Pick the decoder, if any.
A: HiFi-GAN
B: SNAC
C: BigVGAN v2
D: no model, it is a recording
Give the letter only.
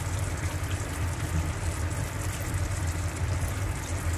C